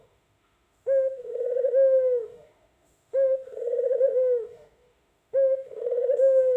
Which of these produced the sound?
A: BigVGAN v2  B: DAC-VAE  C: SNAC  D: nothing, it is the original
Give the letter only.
B